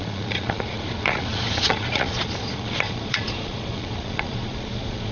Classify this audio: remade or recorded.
remade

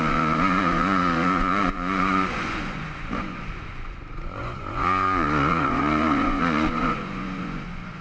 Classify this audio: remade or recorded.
remade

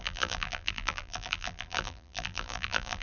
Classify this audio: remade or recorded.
remade